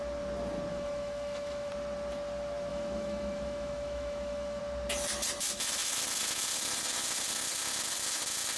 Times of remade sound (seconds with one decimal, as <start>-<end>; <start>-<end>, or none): 0.7-1.7; 2.7-4.6